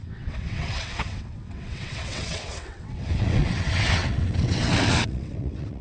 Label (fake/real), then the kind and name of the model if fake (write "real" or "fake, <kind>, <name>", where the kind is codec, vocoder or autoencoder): fake, vocoder, WaveNeXt